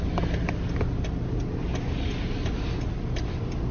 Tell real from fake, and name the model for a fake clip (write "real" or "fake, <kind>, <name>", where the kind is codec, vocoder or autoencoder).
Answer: real